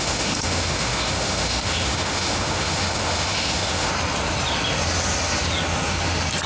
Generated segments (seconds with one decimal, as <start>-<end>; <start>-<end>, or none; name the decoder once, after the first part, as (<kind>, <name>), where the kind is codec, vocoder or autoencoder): 0.0-3.9 (autoencoder, DAC-VAE)